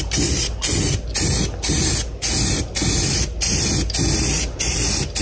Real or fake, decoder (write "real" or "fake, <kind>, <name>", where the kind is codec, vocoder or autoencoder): real